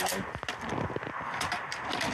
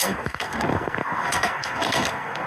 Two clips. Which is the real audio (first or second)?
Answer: first